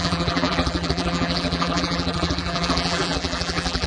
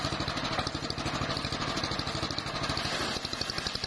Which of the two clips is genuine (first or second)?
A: second